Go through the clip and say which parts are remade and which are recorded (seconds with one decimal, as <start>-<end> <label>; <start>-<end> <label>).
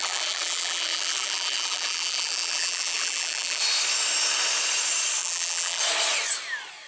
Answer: 0.0-3.6 remade; 3.6-5.2 recorded; 5.2-5.8 remade; 5.8-6.9 recorded